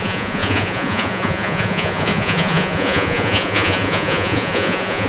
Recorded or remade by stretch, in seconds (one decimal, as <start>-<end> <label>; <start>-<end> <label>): 0.0-5.1 remade